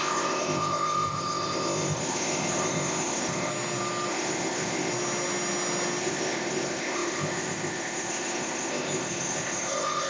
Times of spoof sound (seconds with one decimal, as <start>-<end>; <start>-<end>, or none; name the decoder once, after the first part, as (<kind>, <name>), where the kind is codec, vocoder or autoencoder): 0.0-3.5 (codec, ZipCodec); 4.1-4.9; 6.0-10.1